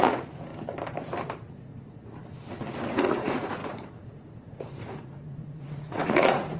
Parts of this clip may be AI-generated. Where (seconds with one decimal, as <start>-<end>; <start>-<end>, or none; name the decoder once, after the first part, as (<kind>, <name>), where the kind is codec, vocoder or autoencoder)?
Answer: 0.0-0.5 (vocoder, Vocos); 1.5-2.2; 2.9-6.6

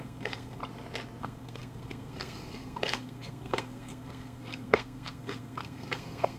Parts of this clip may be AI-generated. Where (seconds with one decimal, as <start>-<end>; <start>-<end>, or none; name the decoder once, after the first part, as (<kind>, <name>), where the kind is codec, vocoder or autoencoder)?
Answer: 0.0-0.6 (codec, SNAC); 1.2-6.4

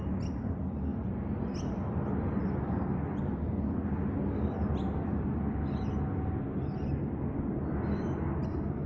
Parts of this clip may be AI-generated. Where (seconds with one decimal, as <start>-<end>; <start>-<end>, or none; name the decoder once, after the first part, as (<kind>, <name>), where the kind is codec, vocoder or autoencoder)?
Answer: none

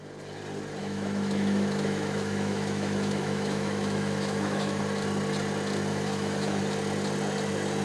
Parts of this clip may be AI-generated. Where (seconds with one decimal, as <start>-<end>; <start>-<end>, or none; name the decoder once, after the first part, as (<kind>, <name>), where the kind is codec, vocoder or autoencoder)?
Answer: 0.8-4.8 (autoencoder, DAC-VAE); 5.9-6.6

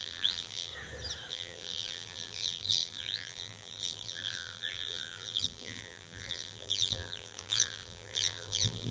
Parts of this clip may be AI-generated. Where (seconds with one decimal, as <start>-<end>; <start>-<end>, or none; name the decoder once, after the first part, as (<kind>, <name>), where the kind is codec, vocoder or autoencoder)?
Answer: 0.0-0.7 (vocoder, BigVGAN v2); 1.3-8.9

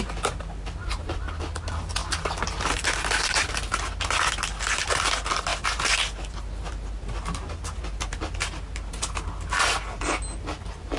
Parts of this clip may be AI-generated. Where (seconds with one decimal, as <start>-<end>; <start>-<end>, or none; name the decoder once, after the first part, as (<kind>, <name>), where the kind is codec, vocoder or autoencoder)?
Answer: none